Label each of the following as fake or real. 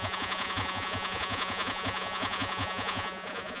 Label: fake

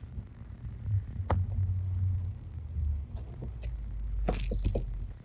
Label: real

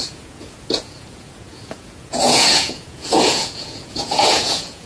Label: fake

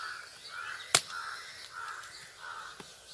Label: real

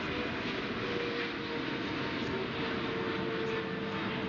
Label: real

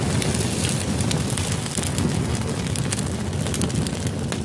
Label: real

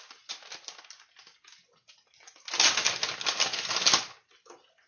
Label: real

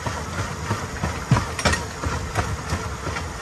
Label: real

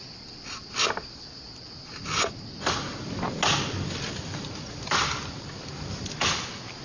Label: real